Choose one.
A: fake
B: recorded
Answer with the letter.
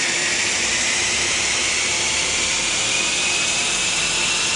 A